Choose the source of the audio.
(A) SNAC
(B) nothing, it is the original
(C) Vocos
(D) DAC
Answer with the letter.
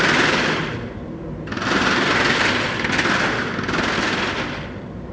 B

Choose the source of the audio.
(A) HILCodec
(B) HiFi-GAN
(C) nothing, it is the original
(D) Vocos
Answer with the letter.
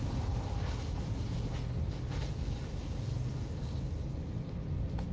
C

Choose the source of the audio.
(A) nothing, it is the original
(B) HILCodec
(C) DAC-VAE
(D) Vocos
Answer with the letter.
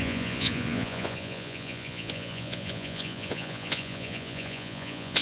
D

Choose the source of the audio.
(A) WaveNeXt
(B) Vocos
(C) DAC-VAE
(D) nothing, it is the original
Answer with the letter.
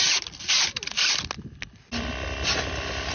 D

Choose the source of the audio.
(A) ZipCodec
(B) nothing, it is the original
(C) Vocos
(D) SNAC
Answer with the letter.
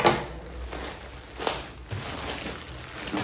B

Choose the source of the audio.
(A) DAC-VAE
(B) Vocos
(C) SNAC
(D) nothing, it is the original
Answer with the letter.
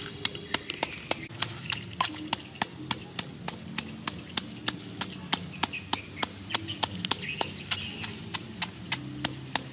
D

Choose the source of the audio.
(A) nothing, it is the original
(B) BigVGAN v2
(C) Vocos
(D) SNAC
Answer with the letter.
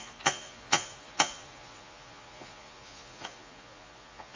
C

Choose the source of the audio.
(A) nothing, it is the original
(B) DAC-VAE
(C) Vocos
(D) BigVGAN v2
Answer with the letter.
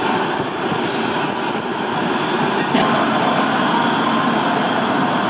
A